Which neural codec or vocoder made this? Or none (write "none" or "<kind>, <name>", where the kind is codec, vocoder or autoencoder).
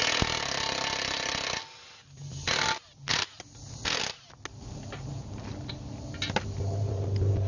none